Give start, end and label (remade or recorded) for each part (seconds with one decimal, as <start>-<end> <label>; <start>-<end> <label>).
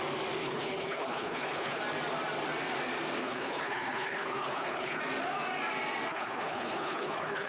0.0-0.4 recorded; 0.4-1.8 remade; 1.8-3.2 recorded; 3.2-5.0 remade; 5.0-6.1 recorded; 6.1-7.5 remade